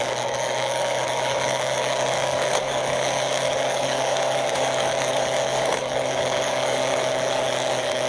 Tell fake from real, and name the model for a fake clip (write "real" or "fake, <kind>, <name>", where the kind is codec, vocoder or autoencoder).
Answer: fake, codec, DAC